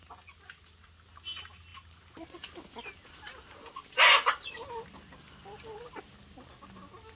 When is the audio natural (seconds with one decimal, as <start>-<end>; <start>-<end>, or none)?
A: 0.0-7.2